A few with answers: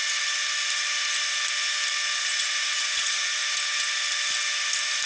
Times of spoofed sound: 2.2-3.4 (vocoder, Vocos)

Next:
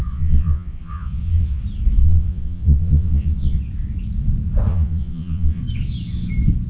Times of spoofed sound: 0.0-1.6 (vocoder, Vocos); 2.0-3.6; 4.7-5.6